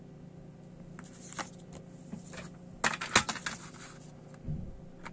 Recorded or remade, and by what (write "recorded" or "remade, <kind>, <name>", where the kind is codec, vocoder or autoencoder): recorded